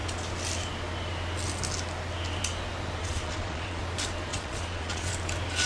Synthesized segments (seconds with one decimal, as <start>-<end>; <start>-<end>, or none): 3.0-3.8; 4.3-5.1